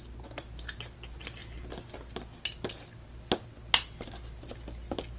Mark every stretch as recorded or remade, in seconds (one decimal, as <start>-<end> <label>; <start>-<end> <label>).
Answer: 0.0-5.2 recorded